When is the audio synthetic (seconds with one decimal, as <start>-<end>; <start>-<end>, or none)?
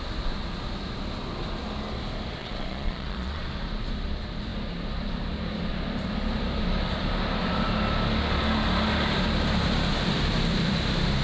2.4-3.4